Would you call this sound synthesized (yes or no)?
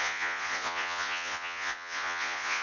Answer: yes